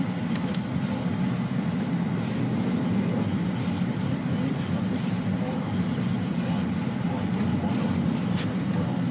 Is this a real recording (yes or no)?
yes